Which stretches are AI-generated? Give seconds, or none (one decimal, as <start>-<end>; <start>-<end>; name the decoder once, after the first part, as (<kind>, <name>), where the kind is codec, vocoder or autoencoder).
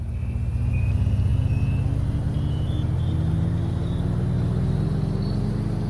none